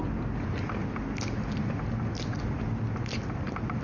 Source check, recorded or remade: recorded